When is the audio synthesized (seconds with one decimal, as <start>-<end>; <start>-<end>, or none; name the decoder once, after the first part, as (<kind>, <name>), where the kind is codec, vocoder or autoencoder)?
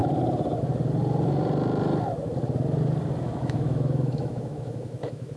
3.2-5.4 (autoencoder, DAC-VAE)